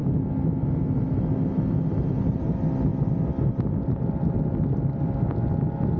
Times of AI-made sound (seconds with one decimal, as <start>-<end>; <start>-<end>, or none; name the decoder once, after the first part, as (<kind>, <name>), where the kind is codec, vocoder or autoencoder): none